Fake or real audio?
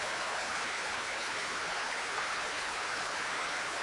fake